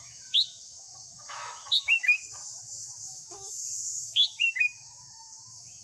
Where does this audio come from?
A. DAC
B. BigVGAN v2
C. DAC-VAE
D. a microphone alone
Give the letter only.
C